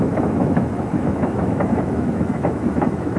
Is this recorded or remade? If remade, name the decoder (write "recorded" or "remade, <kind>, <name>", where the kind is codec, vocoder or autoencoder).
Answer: remade, autoencoder, DAC-VAE